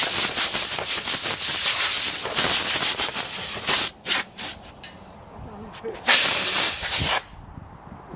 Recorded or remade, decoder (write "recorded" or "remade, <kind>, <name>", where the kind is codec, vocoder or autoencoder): remade, vocoder, BigVGAN v2